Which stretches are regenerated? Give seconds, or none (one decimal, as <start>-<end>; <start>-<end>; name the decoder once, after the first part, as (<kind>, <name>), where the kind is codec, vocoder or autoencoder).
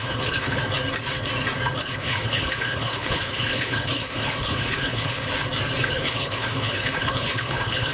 0.0-0.6 (codec, HILCodec); 1.8-5.3; 5.8-7.9